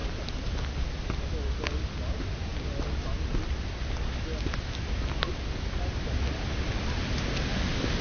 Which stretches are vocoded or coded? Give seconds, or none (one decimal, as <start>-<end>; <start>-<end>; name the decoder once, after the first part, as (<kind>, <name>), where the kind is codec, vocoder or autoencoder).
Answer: none